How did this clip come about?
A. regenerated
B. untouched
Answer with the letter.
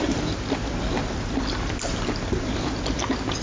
B